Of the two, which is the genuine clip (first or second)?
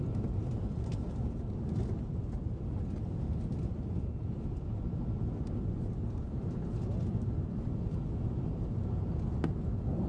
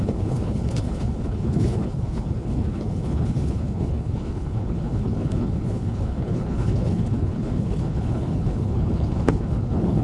first